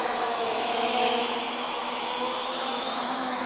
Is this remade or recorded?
remade